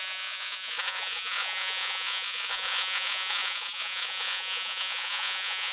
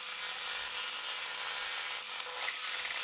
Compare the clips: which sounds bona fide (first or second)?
second